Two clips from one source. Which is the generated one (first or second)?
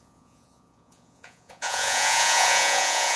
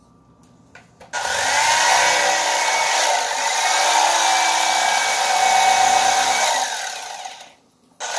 first